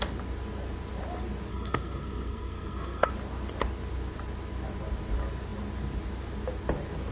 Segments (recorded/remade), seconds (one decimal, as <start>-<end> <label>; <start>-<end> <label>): 0.0-1.5 recorded; 1.5-3.1 remade; 3.1-7.1 recorded